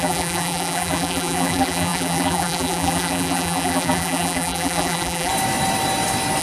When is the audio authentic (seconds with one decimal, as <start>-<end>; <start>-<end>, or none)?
5.3-6.4